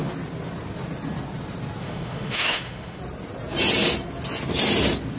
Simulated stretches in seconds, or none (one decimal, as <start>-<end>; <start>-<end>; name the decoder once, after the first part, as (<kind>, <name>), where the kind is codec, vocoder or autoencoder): 1.8-3.0 (autoencoder, DAC-VAE)